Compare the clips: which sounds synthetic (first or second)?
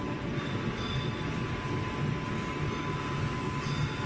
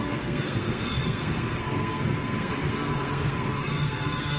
second